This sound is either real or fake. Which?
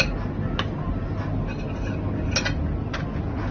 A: real